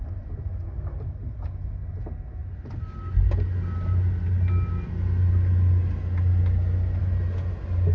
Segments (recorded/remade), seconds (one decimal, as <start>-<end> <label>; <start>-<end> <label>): 0.0-7.9 recorded